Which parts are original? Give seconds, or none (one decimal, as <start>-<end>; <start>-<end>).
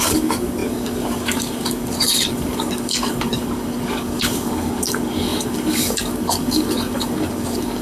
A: none